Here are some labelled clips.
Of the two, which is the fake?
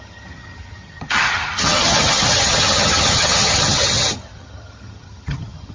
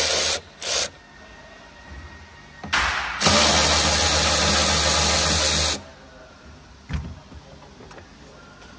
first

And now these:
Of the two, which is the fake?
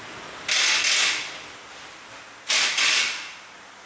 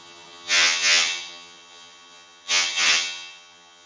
second